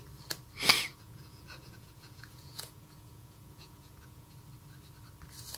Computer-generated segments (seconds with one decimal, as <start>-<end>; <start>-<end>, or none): 0.9-4.3